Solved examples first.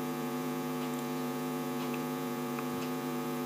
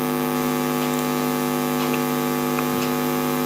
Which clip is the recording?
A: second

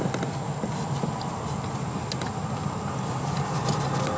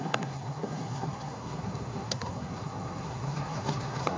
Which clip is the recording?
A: first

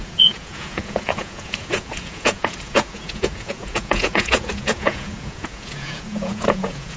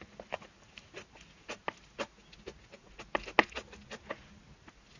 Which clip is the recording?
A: second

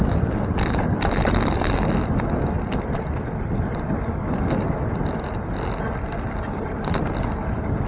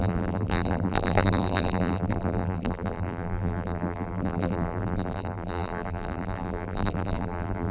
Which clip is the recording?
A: first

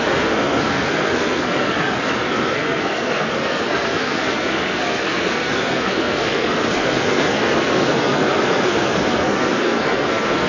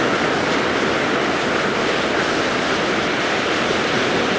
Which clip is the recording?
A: second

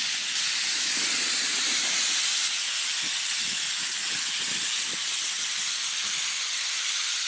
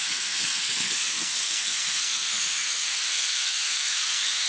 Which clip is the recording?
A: first